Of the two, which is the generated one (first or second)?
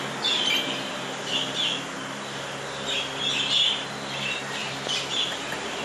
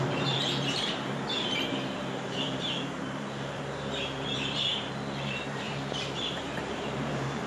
second